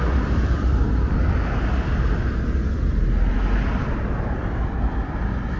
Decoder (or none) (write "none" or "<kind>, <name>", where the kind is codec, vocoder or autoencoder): none